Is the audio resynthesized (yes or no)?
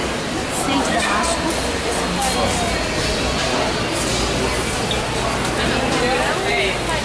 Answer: no